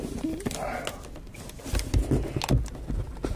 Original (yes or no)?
yes